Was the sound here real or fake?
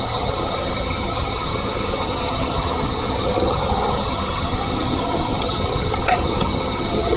fake